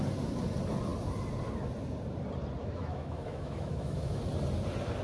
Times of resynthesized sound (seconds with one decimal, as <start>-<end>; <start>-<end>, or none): 2.6-4.2